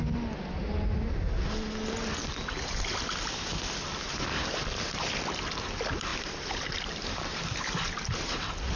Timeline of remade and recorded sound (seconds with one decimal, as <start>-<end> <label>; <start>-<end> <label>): 0.0-0.6 recorded; 0.6-1.3 remade; 1.3-6.1 recorded; 6.1-8.3 remade; 8.3-8.8 recorded

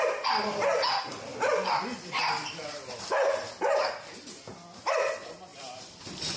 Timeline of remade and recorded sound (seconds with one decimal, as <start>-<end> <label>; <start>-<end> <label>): 0.0-5.5 recorded; 5.5-6.4 remade

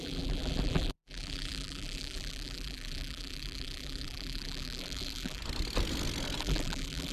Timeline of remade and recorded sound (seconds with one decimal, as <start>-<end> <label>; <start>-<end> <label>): 0.0-5.4 remade; 5.4-6.4 recorded; 6.4-7.1 remade

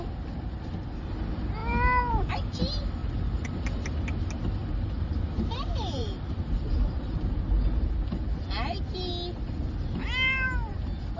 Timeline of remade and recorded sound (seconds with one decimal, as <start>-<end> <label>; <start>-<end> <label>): 0.0-3.0 recorded; 3.0-3.8 remade; 3.8-4.6 recorded; 4.6-8.4 remade; 8.4-11.2 recorded

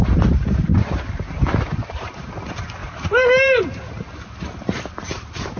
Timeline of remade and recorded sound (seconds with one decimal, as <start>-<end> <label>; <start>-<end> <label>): 0.0-0.7 recorded; 0.7-2.3 remade; 2.3-2.8 recorded; 2.8-3.6 remade; 3.6-5.6 recorded

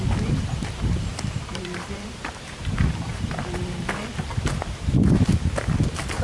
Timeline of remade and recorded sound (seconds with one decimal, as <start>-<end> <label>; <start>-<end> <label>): 0.0-1.1 recorded; 1.1-3.3 remade; 3.3-6.2 recorded